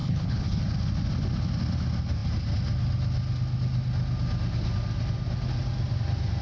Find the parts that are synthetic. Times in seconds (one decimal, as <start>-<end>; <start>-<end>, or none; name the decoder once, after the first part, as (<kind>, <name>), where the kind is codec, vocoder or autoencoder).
0.0-0.6 (codec, HILCodec)